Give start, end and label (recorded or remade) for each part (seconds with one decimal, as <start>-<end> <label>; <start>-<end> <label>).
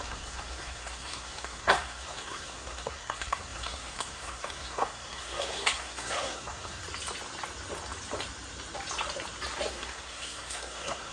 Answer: 0.0-6.8 remade; 6.8-9.7 recorded; 9.7-11.1 remade